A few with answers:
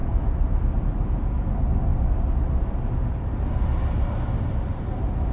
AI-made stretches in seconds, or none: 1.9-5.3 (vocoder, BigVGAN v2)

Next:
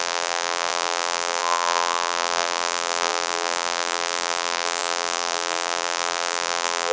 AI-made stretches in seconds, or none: 0.0-6.9 (vocoder, BigVGAN v2)

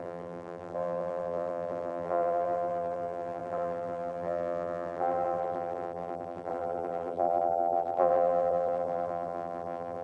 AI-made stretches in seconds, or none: 0.0-10.0 (vocoder, BigVGAN v2)

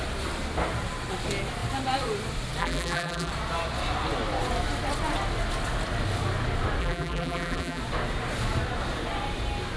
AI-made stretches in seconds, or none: 2.6-3.3 (vocoder, BigVGAN v2); 6.8-7.8

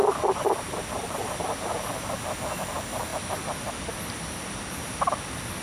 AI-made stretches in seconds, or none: 0.0-1.2 (vocoder, BigVGAN v2)

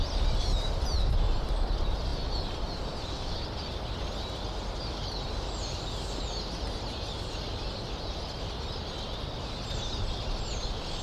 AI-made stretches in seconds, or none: 0.5-1.1 (vocoder, BigVGAN v2)